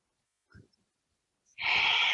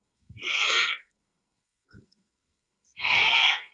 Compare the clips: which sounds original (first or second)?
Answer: first